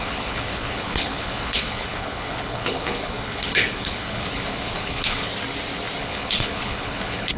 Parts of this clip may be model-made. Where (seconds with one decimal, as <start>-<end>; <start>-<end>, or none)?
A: 0.0-5.3; 6.0-7.4